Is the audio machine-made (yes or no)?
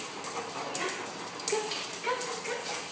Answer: no